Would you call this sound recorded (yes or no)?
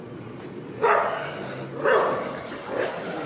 yes